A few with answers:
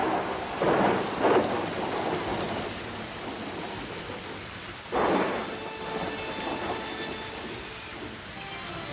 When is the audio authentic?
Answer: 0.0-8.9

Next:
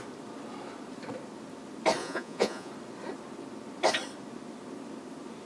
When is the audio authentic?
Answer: 0.0-2.0; 2.7-5.5

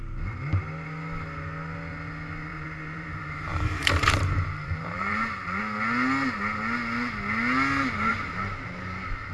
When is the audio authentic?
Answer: 0.0-2.5; 5.6-8.1

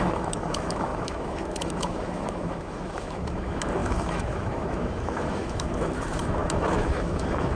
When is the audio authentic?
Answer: none

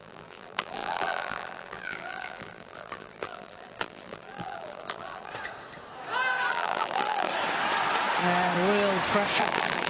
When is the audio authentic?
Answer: 5.3-6.5; 7.3-9.4